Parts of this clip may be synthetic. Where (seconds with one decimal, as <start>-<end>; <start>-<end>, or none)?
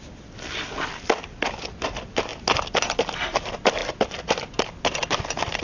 none